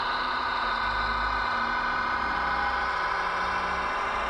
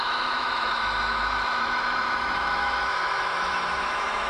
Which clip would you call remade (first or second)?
second